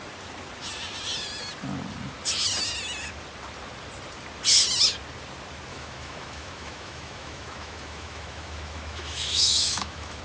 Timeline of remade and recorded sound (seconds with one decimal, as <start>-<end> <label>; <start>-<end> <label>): 0.0-5.7 recorded; 5.7-10.2 remade